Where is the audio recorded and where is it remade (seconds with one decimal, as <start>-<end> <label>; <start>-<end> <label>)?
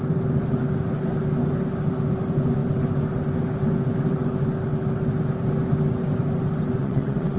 0.0-6.8 recorded; 6.8-7.4 remade